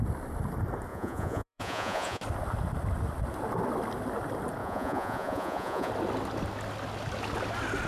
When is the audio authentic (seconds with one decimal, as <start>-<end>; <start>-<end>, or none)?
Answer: 0.0-0.9; 2.2-4.6; 5.9-7.9